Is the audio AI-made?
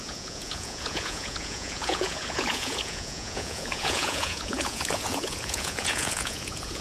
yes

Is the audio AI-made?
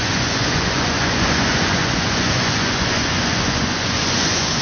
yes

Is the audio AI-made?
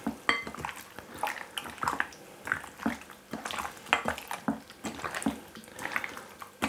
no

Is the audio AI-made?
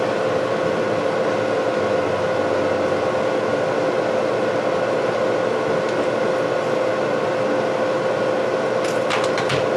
no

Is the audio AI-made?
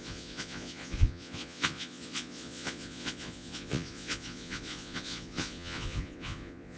yes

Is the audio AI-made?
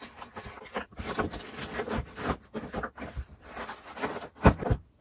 no